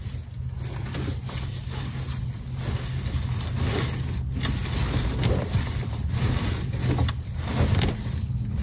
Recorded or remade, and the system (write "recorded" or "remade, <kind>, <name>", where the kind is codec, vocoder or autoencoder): recorded